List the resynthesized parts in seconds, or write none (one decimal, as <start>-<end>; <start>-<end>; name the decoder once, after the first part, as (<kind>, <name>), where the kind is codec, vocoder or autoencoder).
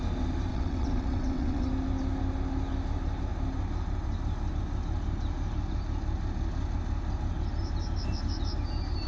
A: 0.5-1.7 (vocoder, WaveNeXt)